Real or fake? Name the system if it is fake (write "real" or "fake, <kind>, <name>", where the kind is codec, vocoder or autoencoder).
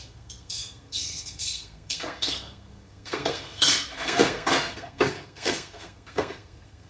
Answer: fake, codec, SNAC